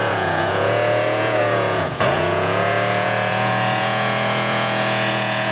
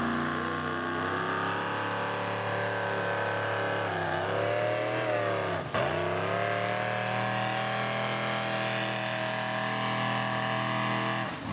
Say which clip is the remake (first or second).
first